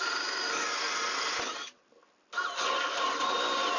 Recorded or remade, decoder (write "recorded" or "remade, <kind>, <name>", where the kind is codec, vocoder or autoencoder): recorded